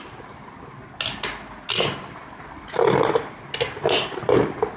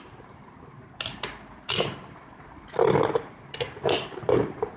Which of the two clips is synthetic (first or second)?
second